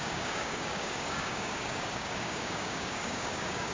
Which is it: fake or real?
fake